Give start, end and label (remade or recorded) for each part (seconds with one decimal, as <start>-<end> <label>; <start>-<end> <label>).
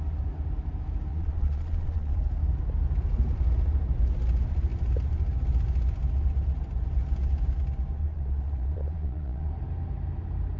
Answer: 0.0-1.1 recorded; 1.1-2.2 remade; 2.2-8.0 recorded; 8.0-9.5 remade; 9.5-10.6 recorded